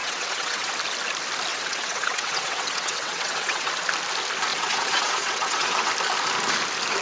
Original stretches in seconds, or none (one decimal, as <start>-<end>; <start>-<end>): 0.7-1.5; 3.7-4.5; 5.9-7.0